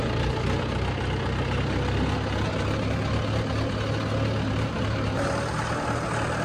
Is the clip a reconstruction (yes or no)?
no